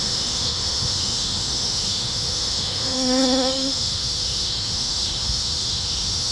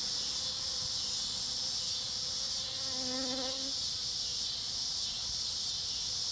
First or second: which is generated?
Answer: first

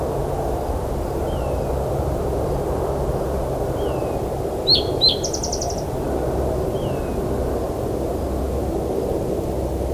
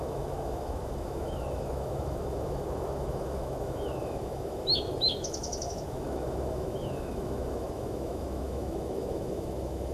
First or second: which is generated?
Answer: second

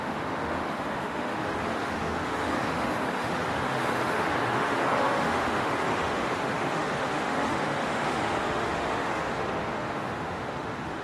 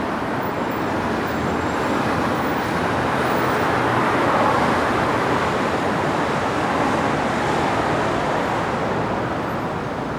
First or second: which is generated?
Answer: first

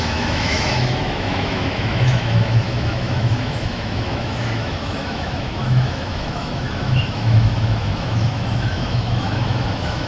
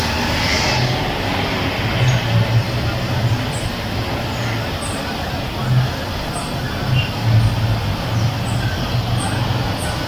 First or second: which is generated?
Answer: first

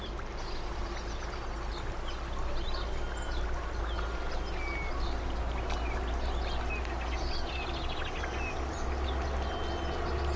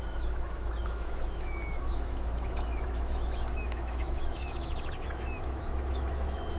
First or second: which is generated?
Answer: second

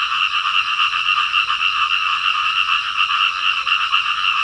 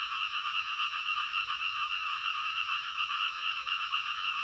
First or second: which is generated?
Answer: second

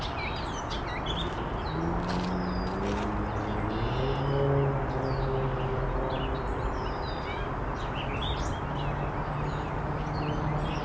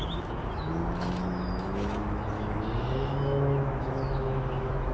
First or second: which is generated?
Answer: second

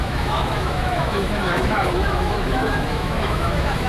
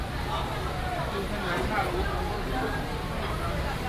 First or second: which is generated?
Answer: first